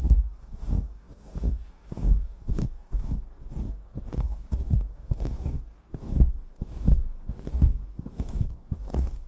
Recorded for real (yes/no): no